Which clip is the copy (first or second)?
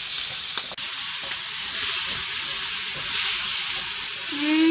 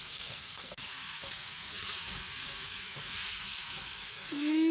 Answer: second